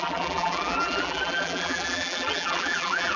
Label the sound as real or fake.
fake